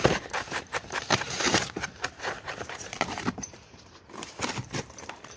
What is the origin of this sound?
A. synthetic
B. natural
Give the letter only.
A